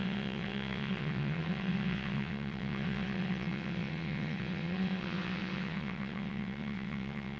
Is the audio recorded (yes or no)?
no